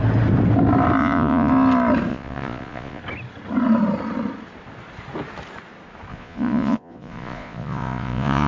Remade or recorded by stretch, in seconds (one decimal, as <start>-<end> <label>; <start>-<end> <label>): 0.0-1.0 recorded; 1.0-1.5 remade; 1.5-2.1 recorded; 2.1-3.0 remade; 3.0-6.1 recorded; 6.1-8.5 remade